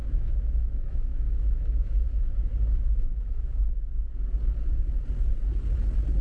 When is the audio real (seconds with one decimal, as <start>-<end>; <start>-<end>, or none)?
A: 3.7-6.2

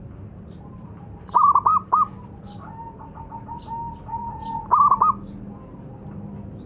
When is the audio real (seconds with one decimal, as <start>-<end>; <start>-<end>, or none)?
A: 0.0-6.7

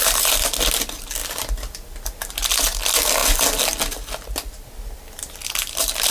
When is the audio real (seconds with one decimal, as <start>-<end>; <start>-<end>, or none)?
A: 0.0-6.1

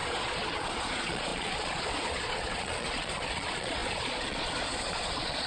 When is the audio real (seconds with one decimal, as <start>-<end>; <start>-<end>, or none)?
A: none

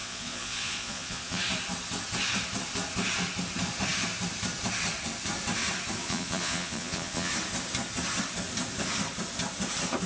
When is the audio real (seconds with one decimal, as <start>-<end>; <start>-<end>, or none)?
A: 1.4-6.0; 7.3-10.1

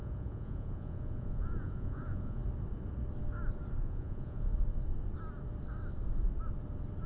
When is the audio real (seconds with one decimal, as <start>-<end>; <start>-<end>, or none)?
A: 2.4-3.8; 4.5-7.1

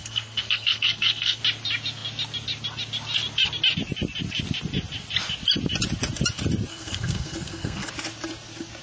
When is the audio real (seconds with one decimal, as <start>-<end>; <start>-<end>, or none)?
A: 1.4-6.7; 7.9-8.8

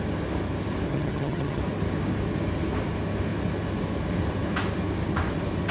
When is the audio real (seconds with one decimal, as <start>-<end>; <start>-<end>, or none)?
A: 0.0-0.9; 1.6-5.7